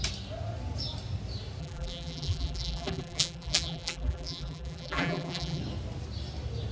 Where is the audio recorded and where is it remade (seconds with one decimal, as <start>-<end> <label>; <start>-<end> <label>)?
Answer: 0.0-1.6 recorded; 1.6-5.6 remade; 5.6-6.7 recorded